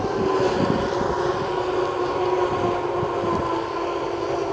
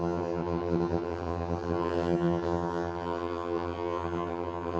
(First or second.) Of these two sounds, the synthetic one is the second